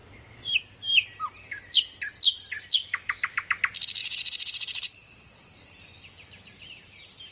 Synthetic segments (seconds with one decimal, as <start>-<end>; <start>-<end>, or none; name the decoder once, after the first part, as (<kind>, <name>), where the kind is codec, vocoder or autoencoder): 0.0-0.5 (vocoder, Vocos); 4.0-5.5